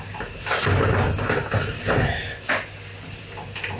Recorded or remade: recorded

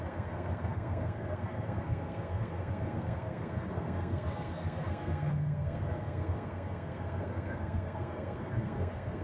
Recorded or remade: remade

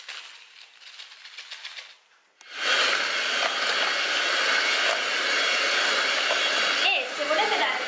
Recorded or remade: recorded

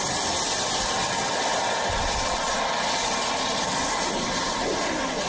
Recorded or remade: recorded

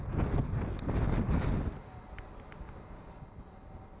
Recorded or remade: recorded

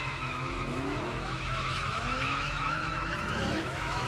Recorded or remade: remade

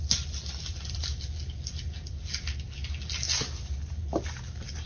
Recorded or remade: recorded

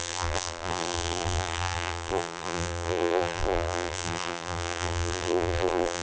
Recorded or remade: remade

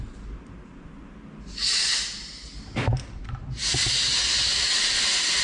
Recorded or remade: recorded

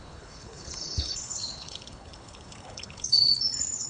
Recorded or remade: remade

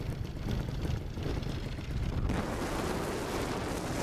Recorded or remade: recorded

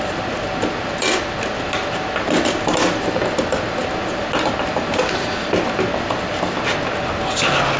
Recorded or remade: recorded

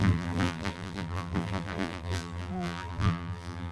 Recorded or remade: remade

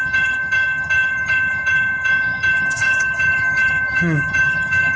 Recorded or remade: remade